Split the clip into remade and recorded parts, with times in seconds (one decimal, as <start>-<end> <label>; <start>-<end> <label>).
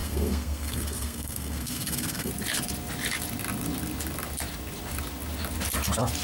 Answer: 0.0-2.3 remade; 2.3-6.2 recorded